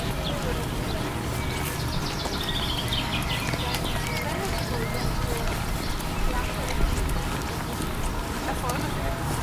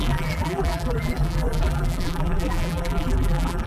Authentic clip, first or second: first